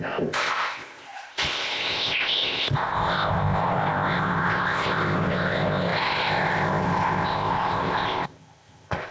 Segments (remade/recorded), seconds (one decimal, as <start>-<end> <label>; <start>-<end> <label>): 0.0-9.1 remade

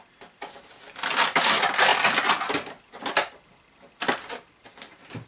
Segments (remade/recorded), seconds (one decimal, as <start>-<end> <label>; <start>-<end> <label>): 0.0-5.3 recorded

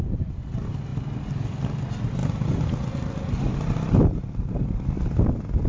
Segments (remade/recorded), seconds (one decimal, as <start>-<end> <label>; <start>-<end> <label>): 0.0-5.7 recorded

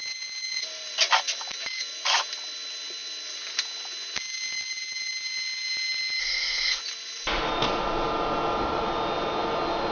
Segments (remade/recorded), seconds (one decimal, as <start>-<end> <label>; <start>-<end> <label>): 0.0-6.2 recorded; 6.2-6.8 remade; 6.8-9.9 recorded

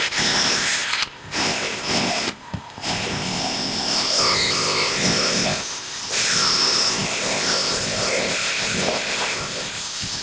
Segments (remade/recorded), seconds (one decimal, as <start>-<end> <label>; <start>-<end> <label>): 0.0-10.2 remade

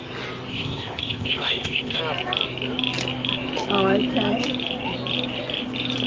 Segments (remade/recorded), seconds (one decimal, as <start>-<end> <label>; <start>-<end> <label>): 0.0-0.5 recorded; 0.5-2.0 remade; 2.0-6.1 recorded